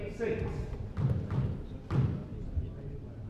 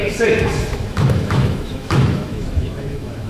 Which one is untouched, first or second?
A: first